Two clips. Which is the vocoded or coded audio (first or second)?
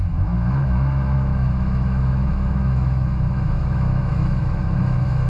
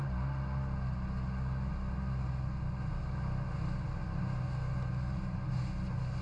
first